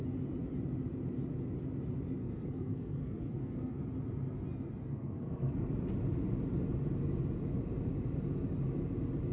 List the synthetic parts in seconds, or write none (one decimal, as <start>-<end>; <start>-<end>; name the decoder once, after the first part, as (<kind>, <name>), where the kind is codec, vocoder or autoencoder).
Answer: 2.2-3.8 (codec, SNAC); 4.9-5.6

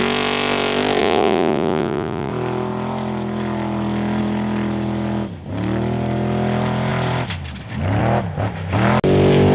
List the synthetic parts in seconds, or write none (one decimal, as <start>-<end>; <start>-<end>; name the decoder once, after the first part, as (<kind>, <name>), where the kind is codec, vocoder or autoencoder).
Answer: 1.0-2.3 (vocoder, Vocos)

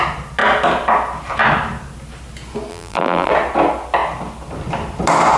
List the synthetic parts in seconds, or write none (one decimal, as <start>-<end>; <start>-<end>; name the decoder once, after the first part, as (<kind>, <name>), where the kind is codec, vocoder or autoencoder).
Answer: 2.7-3.3 (vocoder, BigVGAN v2)

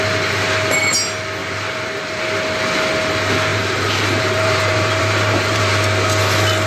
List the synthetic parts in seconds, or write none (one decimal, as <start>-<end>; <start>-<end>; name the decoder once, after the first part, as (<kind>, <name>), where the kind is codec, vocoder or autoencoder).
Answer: 1.4-2.2 (vocoder, BigVGAN v2); 3.5-5.6

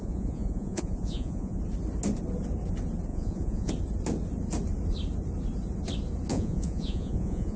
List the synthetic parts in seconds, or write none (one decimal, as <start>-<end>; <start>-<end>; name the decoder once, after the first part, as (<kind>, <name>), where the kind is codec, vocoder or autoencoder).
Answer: 0.0-1.6 (vocoder, Vocos); 3.1-3.7; 6.3-7.6

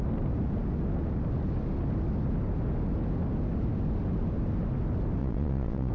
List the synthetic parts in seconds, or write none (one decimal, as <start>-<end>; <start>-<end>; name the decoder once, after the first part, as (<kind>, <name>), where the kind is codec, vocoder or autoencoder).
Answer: 5.2-5.9 (vocoder, Vocos)